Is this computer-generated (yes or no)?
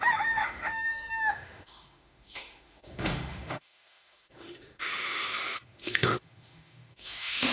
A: yes